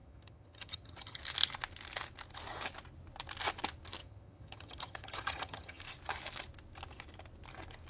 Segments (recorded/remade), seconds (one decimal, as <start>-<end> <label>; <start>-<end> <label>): 0.0-1.2 remade; 1.2-4.0 recorded; 4.0-5.8 remade; 5.8-7.9 recorded